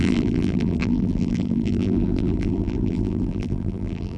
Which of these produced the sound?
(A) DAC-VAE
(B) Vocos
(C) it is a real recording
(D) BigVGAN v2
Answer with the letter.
D